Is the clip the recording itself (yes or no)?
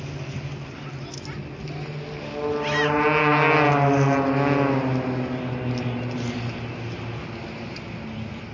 yes